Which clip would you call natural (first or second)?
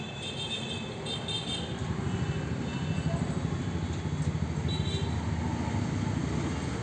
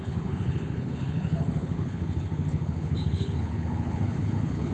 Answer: first